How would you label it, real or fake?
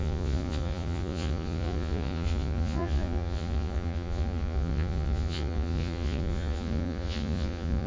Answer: fake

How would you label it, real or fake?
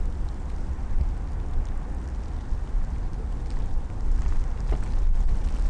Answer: real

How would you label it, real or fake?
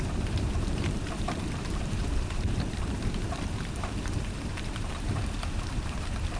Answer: fake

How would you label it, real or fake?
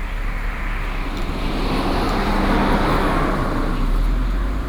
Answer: real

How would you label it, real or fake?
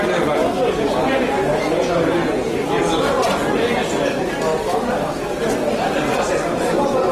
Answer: real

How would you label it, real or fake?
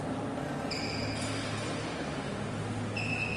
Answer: real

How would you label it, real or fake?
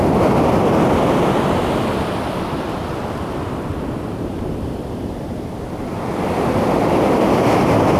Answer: real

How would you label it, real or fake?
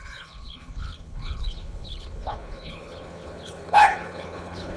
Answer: fake